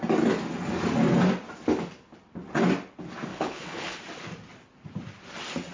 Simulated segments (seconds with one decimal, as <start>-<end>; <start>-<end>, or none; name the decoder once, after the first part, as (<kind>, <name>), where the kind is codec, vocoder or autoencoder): 3.3-4.0 (codec, HILCodec)